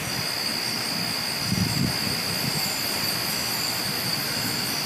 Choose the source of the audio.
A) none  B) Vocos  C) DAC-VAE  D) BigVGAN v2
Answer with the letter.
A